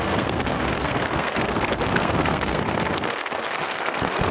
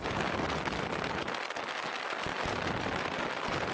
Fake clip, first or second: first